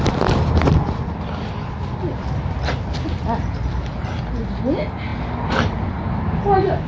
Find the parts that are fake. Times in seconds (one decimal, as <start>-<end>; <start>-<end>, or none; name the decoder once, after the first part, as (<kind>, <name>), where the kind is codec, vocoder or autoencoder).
none